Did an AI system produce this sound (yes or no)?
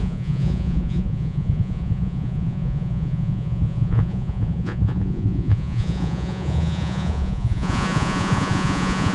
yes